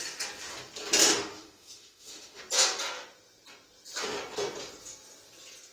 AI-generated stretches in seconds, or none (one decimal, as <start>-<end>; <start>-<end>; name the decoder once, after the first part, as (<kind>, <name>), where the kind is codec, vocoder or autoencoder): 1.0-2.4 (autoencoder, DAC-VAE)